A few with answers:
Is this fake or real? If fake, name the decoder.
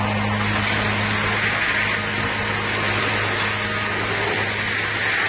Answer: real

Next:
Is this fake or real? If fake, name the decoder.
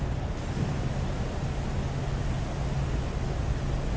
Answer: real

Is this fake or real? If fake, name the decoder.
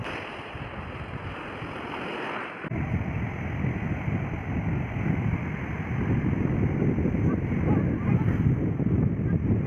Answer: real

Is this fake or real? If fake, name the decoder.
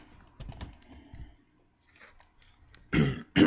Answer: real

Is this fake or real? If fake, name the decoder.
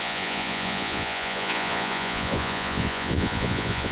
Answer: fake, vocoder, Vocos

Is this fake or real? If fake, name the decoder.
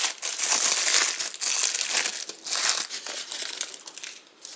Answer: real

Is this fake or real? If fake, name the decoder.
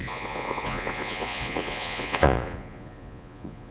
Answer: fake, vocoder, Vocos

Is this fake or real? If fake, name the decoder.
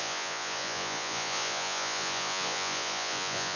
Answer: fake, vocoder, Vocos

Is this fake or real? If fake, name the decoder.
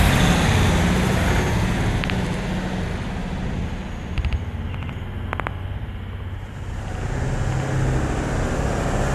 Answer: real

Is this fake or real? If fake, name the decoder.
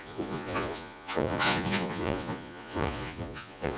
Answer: fake, vocoder, Vocos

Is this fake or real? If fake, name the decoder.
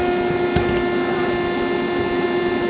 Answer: real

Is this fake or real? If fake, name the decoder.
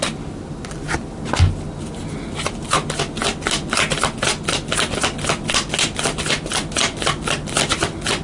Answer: real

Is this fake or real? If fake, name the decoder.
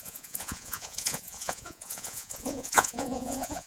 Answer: fake, vocoder, Vocos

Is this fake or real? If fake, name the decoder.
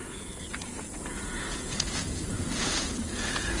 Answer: fake, vocoder, Vocos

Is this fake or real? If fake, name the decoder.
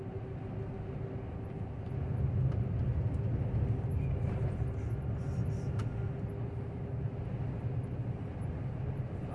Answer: real